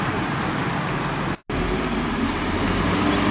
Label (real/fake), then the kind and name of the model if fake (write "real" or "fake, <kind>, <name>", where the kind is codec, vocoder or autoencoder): real